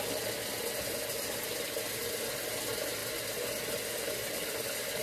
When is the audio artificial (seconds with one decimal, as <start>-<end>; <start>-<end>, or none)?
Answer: none